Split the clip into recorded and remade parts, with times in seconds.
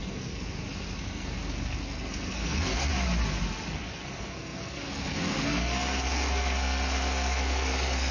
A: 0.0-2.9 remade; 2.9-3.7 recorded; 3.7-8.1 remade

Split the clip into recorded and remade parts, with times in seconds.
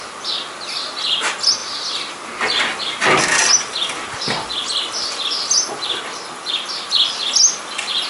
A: 0.0-1.6 recorded; 1.6-2.2 remade; 2.2-8.1 recorded